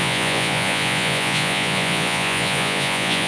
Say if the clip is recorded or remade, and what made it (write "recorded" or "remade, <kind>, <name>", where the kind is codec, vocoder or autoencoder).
remade, vocoder, Vocos